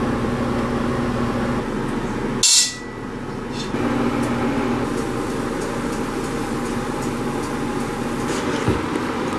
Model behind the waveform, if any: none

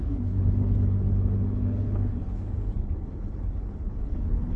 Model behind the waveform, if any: codec, HILCodec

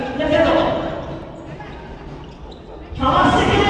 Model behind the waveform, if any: none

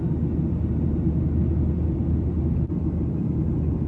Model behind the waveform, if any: none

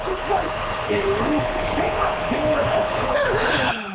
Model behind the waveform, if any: codec, HILCodec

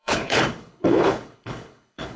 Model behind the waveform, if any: codec, HILCodec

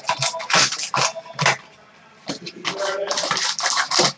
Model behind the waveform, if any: none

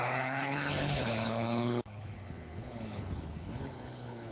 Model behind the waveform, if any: codec, HILCodec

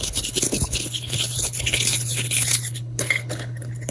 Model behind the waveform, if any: codec, HILCodec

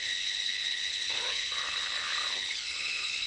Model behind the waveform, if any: codec, HILCodec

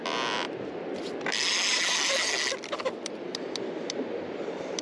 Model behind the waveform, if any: none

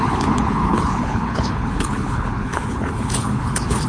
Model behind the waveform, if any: codec, HILCodec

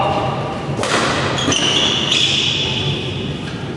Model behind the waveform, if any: none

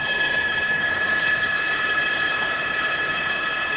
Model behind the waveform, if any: codec, HILCodec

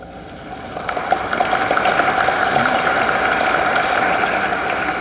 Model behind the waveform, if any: none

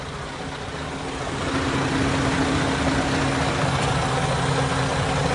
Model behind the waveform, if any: none